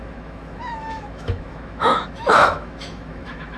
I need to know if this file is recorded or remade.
remade